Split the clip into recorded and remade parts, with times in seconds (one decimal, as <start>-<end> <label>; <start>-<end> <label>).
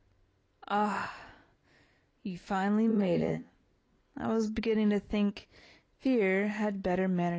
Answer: 0.0-2.9 recorded; 2.9-3.5 remade; 3.5-7.4 recorded